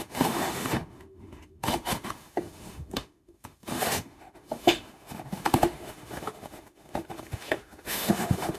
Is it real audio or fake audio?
fake